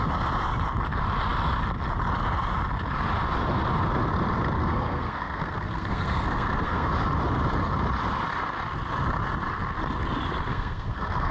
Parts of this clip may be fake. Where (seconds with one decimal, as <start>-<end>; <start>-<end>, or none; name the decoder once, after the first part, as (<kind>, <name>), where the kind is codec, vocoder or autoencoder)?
4.6-6.9 (codec, SNAC); 10.5-11.3